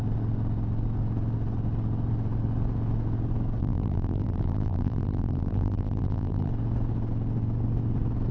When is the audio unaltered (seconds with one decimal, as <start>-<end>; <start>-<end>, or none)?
0.0-3.6; 6.5-8.3